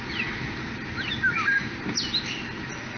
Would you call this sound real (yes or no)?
yes